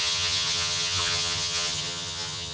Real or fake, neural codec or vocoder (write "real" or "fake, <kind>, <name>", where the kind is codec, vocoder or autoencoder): fake, vocoder, HiFi-GAN